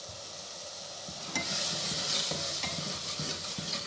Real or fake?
real